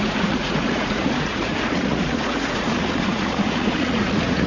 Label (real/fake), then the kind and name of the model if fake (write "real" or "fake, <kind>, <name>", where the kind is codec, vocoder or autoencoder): fake, vocoder, Vocos